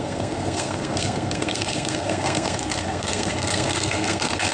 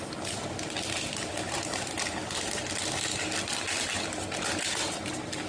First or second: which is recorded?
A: second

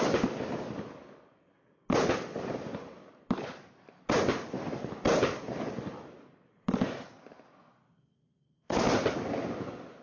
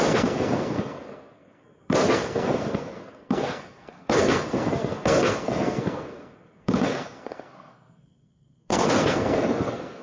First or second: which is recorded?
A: first